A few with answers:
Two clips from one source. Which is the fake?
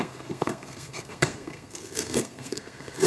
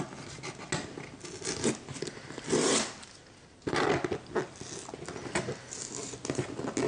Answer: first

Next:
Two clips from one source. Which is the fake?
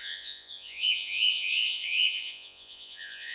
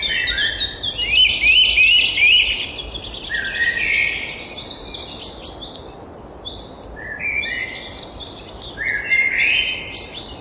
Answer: first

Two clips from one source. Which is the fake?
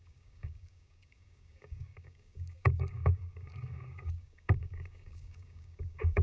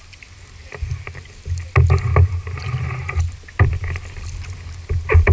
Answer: first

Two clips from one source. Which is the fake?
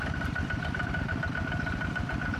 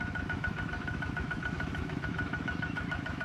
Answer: second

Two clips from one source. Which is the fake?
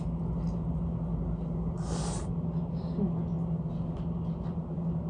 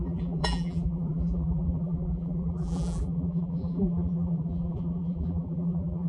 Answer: second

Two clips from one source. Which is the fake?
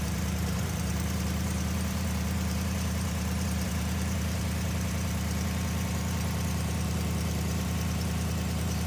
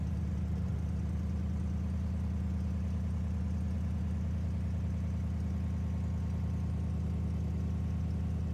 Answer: first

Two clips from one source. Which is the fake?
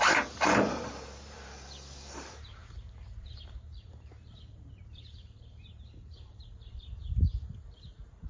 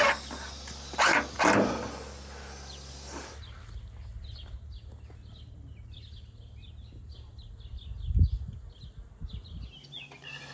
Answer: first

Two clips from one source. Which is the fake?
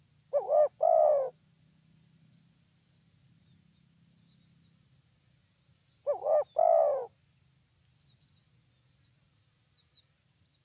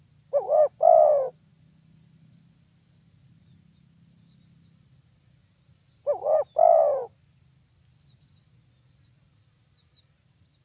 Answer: second